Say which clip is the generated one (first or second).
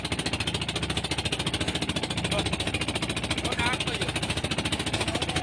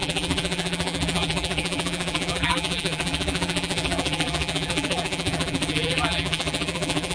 second